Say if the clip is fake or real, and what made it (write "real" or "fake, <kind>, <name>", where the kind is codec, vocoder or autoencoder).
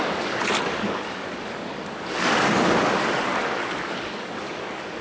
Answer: fake, codec, DAC